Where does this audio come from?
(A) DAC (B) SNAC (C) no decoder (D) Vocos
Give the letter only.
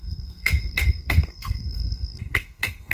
B